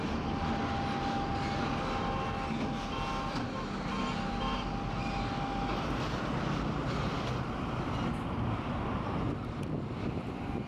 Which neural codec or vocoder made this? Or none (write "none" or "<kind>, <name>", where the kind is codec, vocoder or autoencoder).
none